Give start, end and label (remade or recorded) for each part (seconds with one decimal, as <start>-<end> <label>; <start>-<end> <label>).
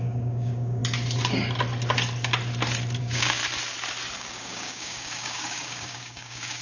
0.0-0.8 remade; 0.8-3.0 recorded; 3.0-3.4 remade; 3.4-4.2 recorded; 4.2-6.6 remade